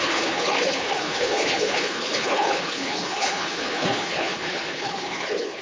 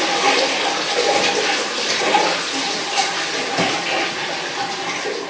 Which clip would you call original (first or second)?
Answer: second